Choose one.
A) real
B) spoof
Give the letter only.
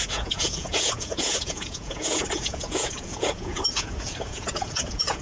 B